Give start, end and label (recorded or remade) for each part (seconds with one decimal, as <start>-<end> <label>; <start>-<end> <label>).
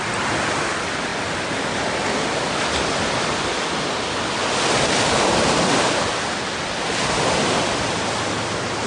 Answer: 0.0-8.9 recorded